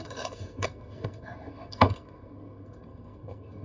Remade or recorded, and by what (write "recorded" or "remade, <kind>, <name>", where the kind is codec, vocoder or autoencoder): remade, codec, SNAC